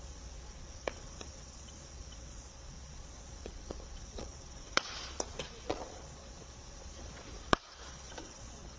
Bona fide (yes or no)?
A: no